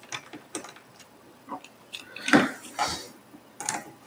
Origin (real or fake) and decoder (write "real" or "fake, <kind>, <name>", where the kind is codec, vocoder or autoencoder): fake, vocoder, BigVGAN v2